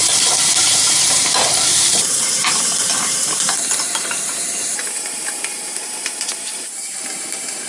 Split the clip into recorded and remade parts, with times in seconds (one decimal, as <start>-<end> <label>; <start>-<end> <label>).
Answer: 0.0-7.7 remade